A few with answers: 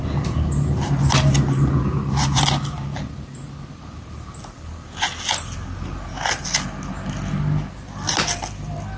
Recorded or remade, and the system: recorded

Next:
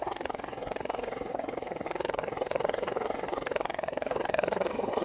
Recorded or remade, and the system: remade, codec, SNAC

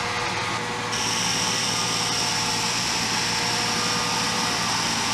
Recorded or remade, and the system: recorded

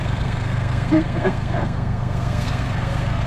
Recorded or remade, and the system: remade, codec, SNAC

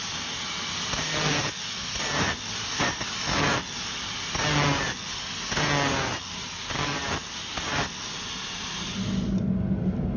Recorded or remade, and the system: recorded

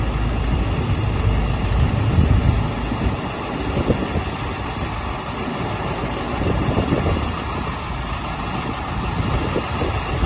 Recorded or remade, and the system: recorded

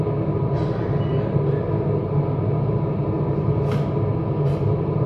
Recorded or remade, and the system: recorded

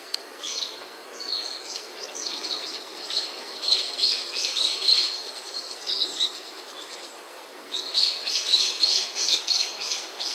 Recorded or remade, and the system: remade, codec, SNAC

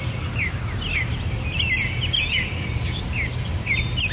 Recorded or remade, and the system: recorded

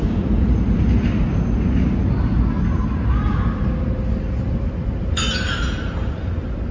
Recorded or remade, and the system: recorded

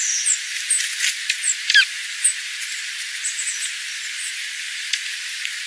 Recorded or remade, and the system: recorded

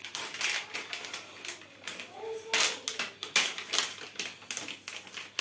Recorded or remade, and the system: recorded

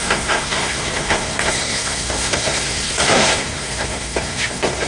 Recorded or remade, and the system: remade, codec, SNAC